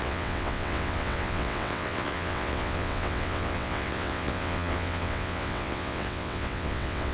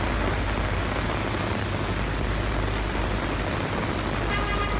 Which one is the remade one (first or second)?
first